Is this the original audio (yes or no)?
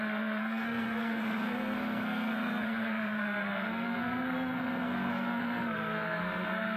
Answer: no